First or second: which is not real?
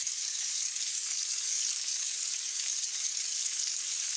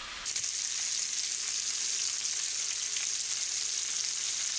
first